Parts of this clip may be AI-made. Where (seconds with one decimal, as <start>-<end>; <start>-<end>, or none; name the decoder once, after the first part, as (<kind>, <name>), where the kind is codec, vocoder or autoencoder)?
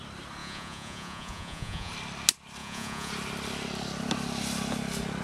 0.4-1.9 (vocoder, Vocos); 2.6-3.1